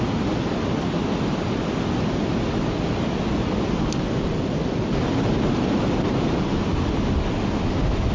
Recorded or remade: recorded